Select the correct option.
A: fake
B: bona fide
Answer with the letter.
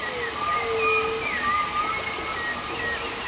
B